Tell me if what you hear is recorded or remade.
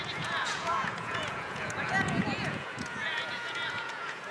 remade